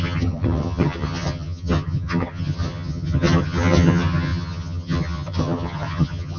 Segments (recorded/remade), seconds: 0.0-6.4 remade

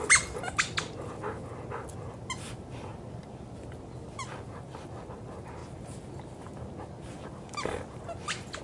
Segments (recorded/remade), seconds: 0.0-8.6 recorded

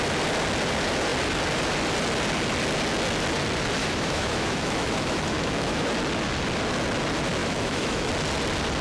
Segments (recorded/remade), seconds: 0.0-3.8 recorded; 3.8-5.8 remade; 5.8-7.4 recorded; 7.4-8.1 remade; 8.1-8.8 recorded

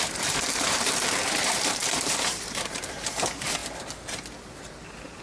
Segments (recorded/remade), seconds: 0.0-3.6 remade; 3.6-4.6 recorded; 4.6-5.2 remade

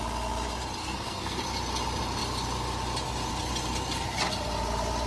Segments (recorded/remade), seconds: 0.0-0.8 recorded; 0.8-1.4 remade; 1.4-5.1 recorded